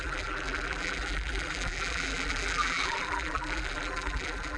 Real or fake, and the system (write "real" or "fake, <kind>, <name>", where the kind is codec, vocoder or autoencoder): fake, vocoder, BigVGAN v2